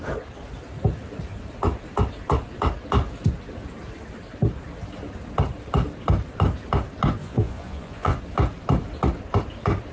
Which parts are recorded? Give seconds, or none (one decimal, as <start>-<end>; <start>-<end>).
0.0-7.2; 8.2-9.9